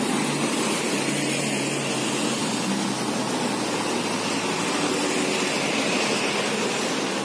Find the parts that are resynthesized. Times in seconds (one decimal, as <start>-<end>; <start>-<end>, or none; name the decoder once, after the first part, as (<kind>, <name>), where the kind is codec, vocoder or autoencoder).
none